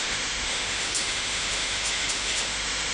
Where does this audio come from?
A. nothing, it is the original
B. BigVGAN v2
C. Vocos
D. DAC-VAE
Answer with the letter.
D